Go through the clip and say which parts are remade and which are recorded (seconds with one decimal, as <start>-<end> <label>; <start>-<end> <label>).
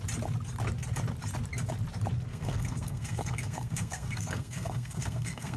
0.0-2.3 recorded; 2.3-5.6 remade